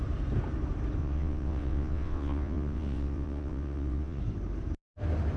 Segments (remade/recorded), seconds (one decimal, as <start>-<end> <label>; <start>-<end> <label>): 0.0-1.0 recorded; 1.0-4.2 remade; 4.2-5.4 recorded